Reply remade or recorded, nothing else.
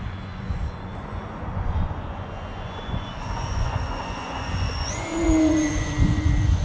remade